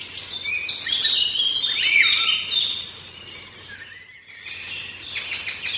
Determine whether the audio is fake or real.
real